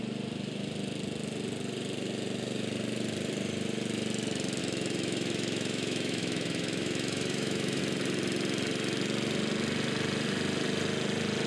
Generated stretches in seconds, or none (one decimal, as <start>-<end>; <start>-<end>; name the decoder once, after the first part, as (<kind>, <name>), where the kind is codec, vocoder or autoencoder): 4.6-7.8 (autoencoder, DAC-VAE)